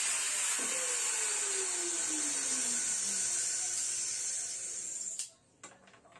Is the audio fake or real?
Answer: real